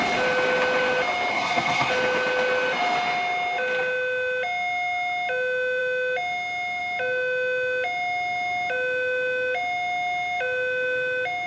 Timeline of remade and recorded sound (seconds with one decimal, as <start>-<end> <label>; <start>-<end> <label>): 0.0-1.3 recorded; 1.3-1.9 remade; 1.9-11.5 recorded